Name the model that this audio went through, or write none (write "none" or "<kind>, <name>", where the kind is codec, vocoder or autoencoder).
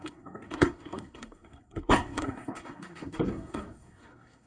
codec, SNAC